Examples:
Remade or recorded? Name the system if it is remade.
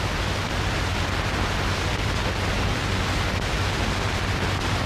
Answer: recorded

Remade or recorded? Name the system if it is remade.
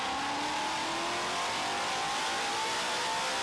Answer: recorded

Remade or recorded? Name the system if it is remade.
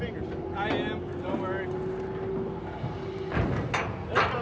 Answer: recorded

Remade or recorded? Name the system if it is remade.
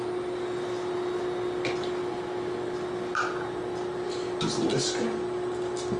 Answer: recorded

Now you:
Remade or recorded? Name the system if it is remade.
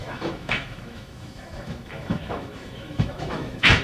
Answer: remade, autoencoder, DAC-VAE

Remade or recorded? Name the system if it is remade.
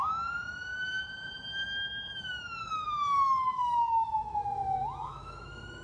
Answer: remade, autoencoder, DAC-VAE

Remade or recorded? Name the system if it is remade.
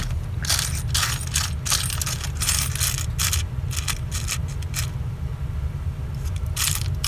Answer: recorded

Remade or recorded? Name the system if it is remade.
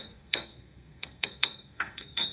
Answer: remade, codec, SNAC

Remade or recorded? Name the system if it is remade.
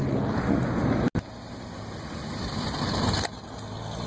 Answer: recorded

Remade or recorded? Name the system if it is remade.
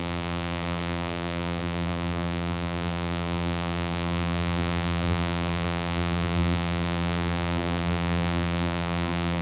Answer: remade, vocoder, BigVGAN v2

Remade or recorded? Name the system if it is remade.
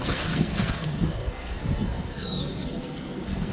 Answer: remade, codec, SNAC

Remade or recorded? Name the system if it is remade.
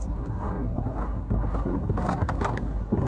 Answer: remade, codec, SNAC